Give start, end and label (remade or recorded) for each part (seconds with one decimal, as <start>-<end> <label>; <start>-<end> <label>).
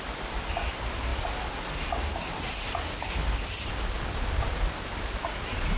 0.0-5.8 recorded